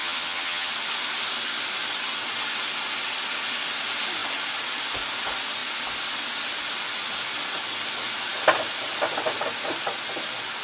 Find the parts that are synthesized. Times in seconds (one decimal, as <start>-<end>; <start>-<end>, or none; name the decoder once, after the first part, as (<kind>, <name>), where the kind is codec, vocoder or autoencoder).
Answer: 0.0-0.7 (vocoder, HiFi-GAN)